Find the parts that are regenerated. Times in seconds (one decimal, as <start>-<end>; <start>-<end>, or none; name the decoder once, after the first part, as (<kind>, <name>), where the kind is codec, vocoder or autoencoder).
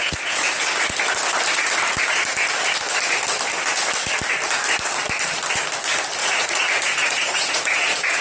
0.0-0.6 (vocoder, Vocos); 6.2-8.2